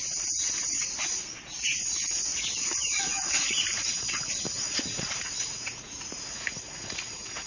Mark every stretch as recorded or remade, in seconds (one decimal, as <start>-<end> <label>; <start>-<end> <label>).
0.0-2.3 remade; 2.3-2.9 recorded; 2.9-7.5 remade